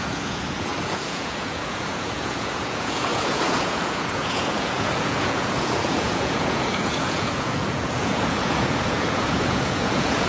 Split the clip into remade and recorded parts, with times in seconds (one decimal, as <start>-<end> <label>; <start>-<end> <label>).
0.0-10.3 remade

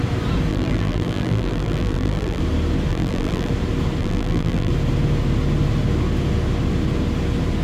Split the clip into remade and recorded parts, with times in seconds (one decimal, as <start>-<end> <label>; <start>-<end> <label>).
0.0-0.5 recorded; 0.5-2.4 remade; 2.4-2.9 recorded; 2.9-3.5 remade; 3.5-4.0 recorded; 4.0-4.7 remade; 4.7-7.6 recorded